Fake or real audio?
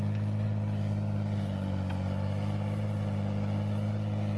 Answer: real